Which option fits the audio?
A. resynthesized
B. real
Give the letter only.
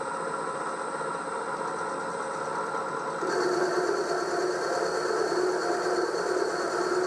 B